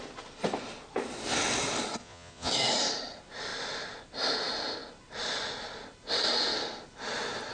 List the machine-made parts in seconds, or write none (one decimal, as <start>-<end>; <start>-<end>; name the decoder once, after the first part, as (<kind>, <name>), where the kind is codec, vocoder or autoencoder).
2.0-2.5 (vocoder, Vocos)